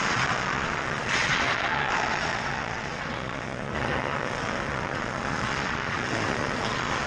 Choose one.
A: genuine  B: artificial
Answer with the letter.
B